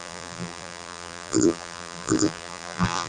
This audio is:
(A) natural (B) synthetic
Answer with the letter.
B